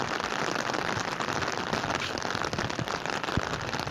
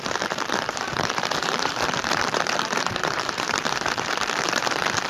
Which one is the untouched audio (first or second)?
first